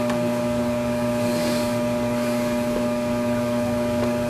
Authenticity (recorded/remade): remade